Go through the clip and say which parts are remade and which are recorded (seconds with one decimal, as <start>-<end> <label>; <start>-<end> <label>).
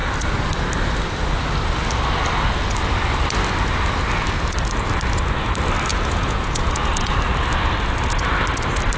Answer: 0.0-5.9 recorded; 5.9-7.1 remade; 7.1-9.0 recorded